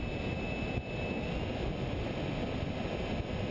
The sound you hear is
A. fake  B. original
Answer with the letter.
B